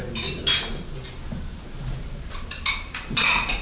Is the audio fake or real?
real